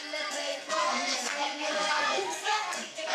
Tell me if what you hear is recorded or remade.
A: remade